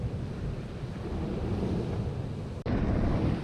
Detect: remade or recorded recorded